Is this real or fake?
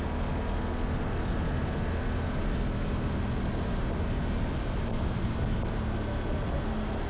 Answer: real